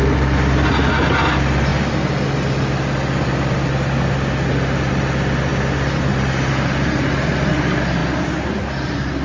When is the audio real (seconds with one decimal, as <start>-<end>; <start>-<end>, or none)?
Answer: 0.0-9.2